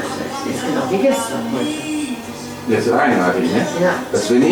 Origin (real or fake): real